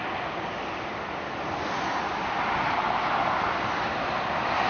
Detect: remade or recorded recorded